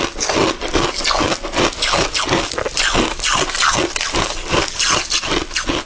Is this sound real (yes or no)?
yes